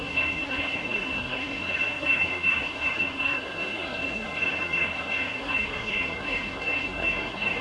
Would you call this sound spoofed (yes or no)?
yes